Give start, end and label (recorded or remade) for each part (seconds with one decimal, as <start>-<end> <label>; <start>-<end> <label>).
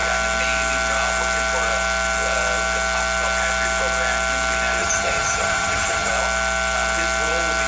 0.0-4.8 recorded; 4.8-6.1 remade; 6.1-7.7 recorded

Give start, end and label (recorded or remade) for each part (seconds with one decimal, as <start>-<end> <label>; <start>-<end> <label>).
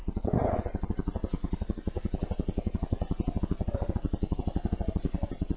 0.0-5.6 recorded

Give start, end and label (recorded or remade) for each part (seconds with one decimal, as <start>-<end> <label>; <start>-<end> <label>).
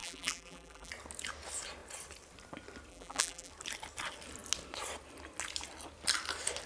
0.0-0.9 remade; 0.9-2.9 recorded; 2.9-3.5 remade; 3.5-6.7 recorded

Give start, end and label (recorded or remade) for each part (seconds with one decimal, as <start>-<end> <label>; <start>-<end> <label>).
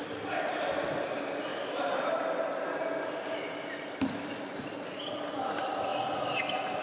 0.0-1.5 recorded; 1.5-2.2 remade; 2.2-6.8 recorded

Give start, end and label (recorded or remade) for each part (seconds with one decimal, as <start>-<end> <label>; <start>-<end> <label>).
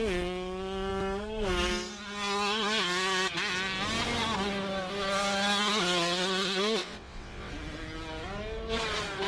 0.0-6.8 recorded; 6.8-7.5 remade; 7.5-9.3 recorded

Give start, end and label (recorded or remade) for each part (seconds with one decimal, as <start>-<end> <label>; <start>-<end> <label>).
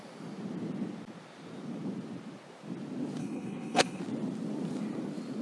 0.0-3.2 recorded; 3.2-4.0 remade; 4.0-5.4 recorded